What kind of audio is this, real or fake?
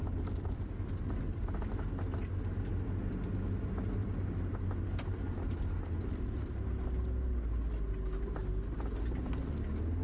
real